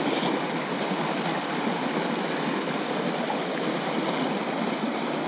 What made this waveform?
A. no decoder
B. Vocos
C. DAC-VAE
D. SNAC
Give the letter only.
A